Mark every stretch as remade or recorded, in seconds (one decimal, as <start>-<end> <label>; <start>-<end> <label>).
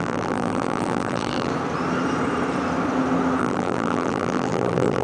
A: 0.0-1.5 remade; 1.5-3.4 recorded; 3.4-5.0 remade